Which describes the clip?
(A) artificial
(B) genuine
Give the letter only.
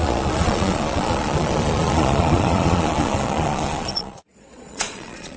A